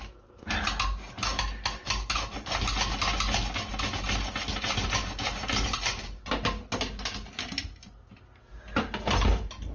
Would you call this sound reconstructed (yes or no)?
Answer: no